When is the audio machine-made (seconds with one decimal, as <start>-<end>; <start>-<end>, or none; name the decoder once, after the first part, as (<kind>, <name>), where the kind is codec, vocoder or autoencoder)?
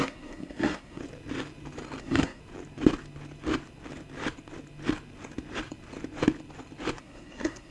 0.0-1.0 (codec, SNAC); 2.0-2.4; 7.0-7.7